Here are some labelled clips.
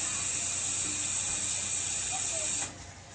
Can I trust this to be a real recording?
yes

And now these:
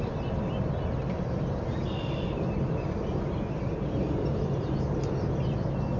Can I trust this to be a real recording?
yes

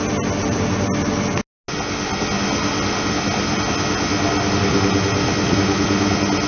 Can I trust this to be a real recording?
yes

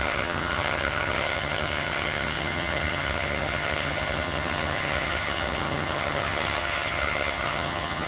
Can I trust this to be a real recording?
no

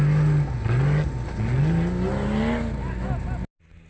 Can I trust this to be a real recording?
yes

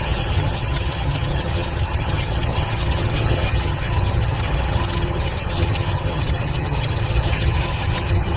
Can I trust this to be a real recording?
no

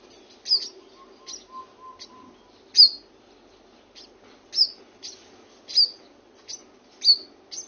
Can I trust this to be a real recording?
yes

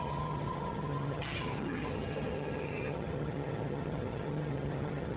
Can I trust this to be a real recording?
no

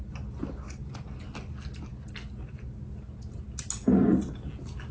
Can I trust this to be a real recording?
yes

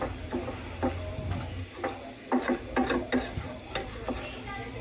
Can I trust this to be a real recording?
yes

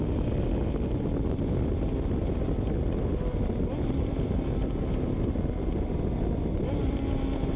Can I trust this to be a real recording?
yes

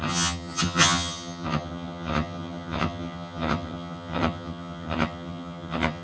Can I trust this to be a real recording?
no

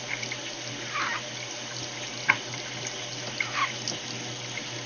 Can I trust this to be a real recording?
yes